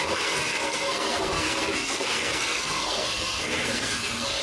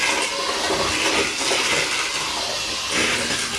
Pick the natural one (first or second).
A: second